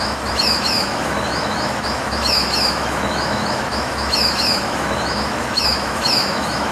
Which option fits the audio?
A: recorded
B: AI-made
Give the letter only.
B